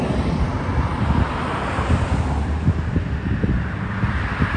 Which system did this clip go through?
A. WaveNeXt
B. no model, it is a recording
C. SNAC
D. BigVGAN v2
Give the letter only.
D